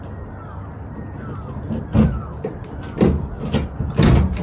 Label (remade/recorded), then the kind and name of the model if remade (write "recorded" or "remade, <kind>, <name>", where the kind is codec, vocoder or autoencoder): recorded